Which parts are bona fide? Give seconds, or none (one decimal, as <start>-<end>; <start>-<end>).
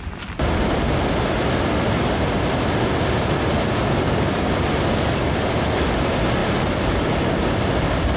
0.0-6.4; 7.3-8.2